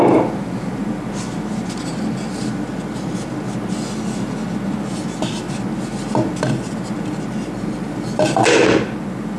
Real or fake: real